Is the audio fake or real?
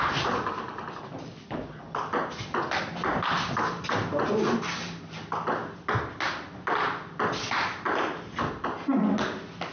real